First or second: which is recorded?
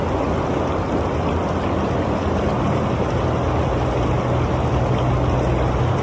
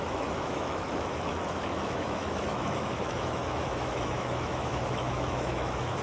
first